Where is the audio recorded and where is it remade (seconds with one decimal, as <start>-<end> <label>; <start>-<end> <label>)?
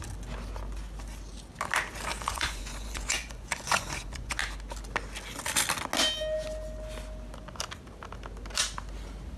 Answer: 0.0-2.1 recorded; 2.1-4.4 remade; 4.4-9.4 recorded